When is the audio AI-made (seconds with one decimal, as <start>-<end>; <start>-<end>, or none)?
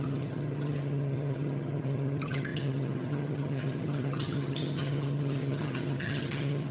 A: 0.0-6.7